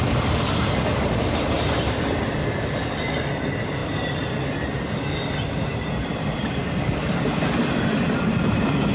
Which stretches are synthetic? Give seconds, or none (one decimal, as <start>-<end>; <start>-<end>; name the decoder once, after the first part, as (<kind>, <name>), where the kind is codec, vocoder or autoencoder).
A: none